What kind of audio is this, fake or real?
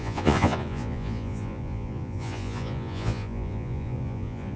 fake